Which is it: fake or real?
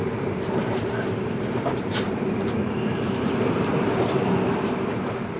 fake